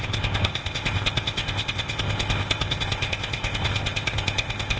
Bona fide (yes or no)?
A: no